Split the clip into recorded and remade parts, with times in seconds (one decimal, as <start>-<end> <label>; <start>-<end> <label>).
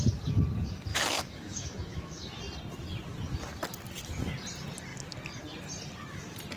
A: 0.0-0.9 recorded; 0.9-2.4 remade; 2.4-6.6 recorded